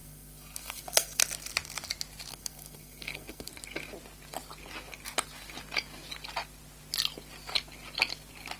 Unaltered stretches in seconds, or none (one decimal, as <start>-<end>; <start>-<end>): 1.2-2.3; 3.5-8.6